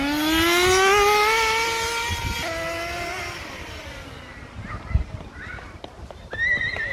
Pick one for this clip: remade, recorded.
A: recorded